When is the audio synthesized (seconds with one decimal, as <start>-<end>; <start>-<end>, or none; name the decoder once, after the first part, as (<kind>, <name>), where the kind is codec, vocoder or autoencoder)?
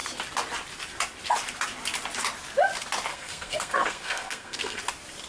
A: 3.1-4.8 (codec, SNAC)